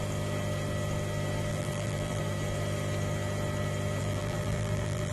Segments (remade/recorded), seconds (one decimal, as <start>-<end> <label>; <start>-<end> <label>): 0.0-1.5 recorded; 1.5-2.2 remade; 2.2-4.0 recorded; 4.0-5.1 remade